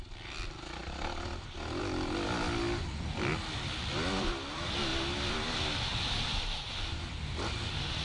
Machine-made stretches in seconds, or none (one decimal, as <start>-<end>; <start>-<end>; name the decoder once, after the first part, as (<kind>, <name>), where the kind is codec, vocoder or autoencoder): none